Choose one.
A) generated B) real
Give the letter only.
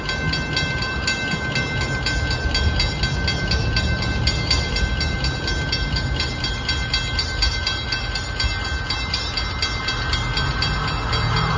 B